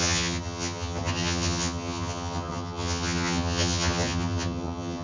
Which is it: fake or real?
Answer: fake